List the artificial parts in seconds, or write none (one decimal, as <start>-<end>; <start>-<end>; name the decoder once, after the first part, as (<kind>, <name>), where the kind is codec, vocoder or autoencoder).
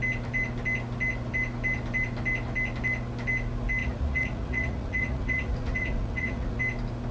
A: 3.8-6.6 (vocoder, Vocos)